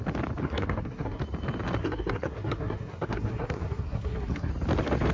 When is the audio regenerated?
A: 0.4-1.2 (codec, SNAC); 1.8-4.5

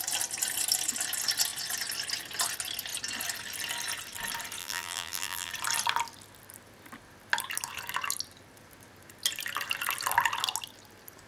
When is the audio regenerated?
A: 4.6-5.5 (vocoder, BigVGAN v2)

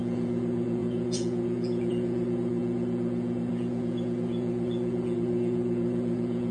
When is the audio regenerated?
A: 0.0-6.5 (vocoder, Vocos)

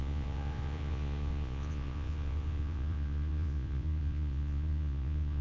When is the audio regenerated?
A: 0.0-5.4 (vocoder, Vocos)

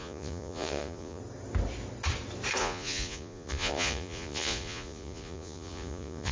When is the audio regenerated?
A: 0.0-1.2 (vocoder, Vocos); 2.6-6.3

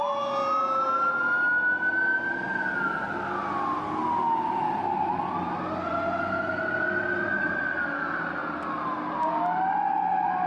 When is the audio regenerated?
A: none

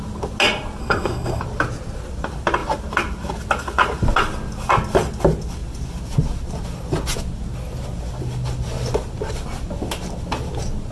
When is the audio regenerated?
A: 0.8-1.4 (codec, SNAC)

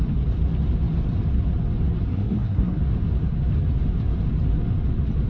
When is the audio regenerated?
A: 2.1-2.8 (codec, SNAC)